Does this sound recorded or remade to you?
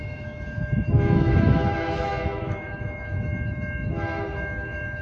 remade